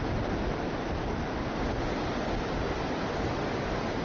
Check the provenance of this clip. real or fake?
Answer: real